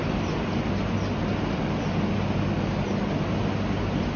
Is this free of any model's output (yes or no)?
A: yes